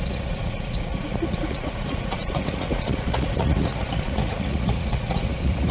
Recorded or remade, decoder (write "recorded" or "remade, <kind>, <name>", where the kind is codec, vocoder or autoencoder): remade, vocoder, Vocos